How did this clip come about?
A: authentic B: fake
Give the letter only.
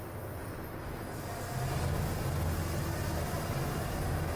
A